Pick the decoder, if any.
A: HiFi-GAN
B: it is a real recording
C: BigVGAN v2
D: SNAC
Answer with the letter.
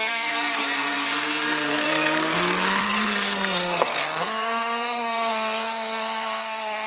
D